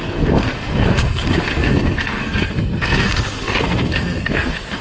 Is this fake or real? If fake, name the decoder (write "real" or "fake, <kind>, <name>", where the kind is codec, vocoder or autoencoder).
fake, codec, SNAC